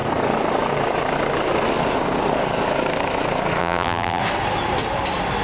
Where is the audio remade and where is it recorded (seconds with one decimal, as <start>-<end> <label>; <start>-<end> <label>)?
0.0-3.6 recorded; 3.6-4.2 remade; 4.2-5.4 recorded